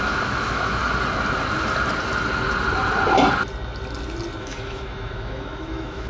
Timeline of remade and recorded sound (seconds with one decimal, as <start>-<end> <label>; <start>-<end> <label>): 0.0-0.8 remade; 0.8-4.4 recorded; 4.4-6.1 remade